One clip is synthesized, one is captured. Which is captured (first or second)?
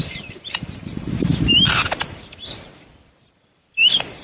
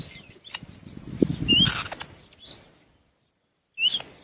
second